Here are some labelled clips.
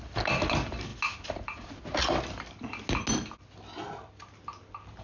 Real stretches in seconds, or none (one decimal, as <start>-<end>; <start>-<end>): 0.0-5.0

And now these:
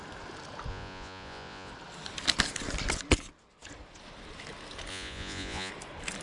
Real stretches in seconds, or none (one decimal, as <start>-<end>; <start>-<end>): 0.0-0.7; 1.7-4.9; 5.7-6.2

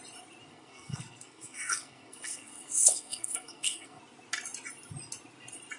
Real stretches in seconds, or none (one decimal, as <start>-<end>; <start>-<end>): 0.0-0.5; 4.0-5.8

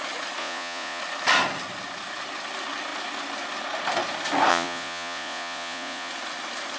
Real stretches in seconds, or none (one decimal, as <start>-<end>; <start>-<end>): 0.0-0.4; 1.0-4.5; 6.1-6.8

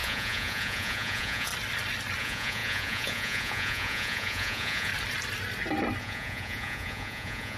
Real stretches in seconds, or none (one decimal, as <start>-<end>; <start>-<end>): 1.5-2.2; 4.9-6.0

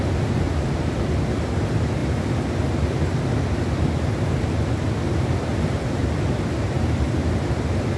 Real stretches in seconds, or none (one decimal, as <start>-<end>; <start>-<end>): 0.0-5.5; 6.0-8.0

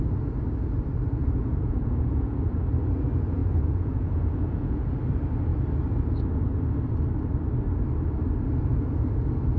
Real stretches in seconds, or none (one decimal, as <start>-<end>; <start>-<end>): 0.0-1.2; 2.6-3.4; 4.9-9.6

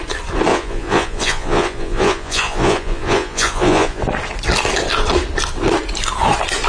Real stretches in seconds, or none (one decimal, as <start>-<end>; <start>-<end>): 0.0-0.5; 4.0-6.7